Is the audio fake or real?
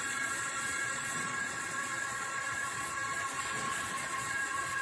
fake